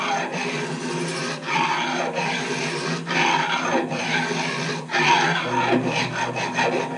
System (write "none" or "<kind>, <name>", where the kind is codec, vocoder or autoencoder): none